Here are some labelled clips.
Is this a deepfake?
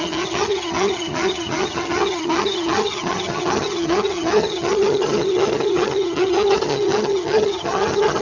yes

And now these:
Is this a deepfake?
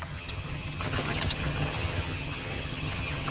yes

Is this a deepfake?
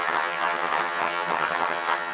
yes